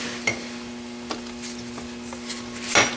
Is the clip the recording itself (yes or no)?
yes